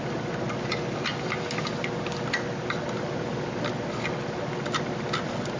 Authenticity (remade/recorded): recorded